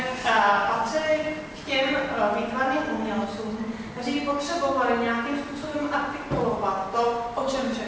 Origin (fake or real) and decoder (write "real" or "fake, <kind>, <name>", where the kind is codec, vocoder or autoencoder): real